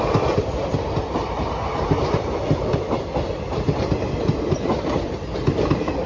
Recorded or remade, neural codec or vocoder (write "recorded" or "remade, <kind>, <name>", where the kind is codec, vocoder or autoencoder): recorded